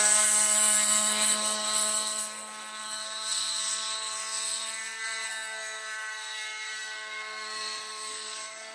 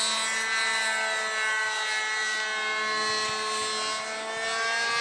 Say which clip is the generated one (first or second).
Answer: first